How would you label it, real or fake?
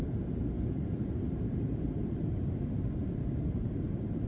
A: fake